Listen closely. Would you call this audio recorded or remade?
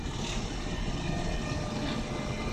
recorded